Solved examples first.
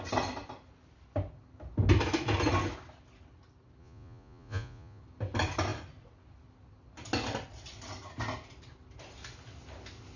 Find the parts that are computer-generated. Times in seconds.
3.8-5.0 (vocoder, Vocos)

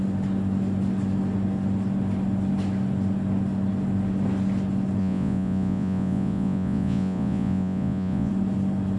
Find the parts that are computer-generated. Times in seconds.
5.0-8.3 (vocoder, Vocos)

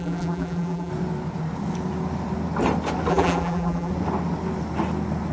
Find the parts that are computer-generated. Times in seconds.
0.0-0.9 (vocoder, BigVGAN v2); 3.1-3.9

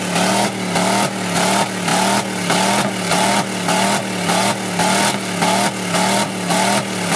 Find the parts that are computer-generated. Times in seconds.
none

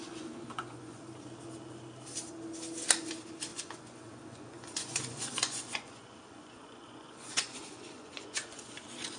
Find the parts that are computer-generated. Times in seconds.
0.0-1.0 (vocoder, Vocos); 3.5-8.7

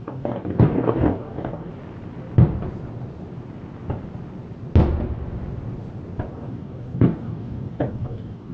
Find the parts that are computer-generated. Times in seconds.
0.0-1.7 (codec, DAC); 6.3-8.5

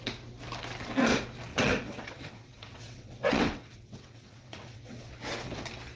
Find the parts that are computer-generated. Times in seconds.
1.5-5.1 (vocoder, WaveNeXt)